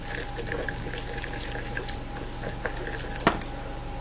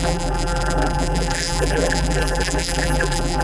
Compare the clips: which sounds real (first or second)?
first